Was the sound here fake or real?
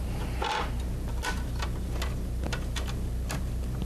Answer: real